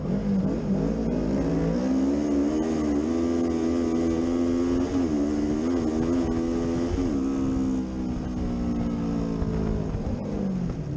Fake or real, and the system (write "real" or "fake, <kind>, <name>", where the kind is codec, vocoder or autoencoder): real